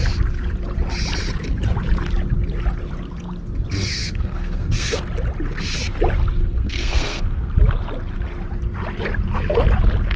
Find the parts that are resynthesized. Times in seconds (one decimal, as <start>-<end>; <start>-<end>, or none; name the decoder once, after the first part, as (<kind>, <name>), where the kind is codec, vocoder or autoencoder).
3.9-5.0 (codec, SNAC); 6.4-7.5